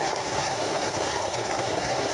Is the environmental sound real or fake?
fake